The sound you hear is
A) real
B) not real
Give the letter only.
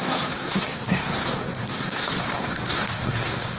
B